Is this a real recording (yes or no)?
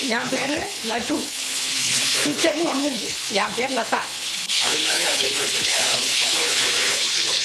no